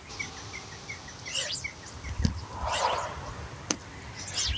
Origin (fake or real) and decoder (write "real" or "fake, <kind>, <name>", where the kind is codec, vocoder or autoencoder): real